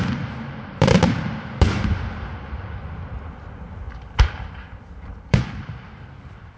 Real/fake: fake